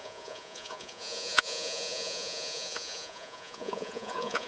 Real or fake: fake